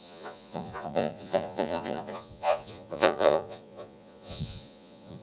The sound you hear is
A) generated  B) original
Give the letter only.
A